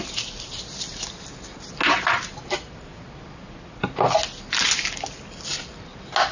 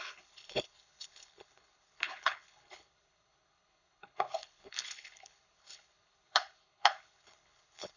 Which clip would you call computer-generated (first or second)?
second